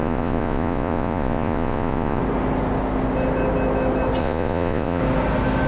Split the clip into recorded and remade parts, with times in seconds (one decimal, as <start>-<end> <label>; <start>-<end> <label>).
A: 0.0-2.2 remade; 2.2-4.2 recorded; 4.2-5.0 remade; 5.0-5.7 recorded